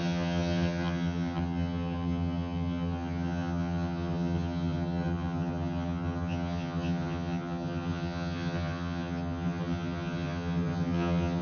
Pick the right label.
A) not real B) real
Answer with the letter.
A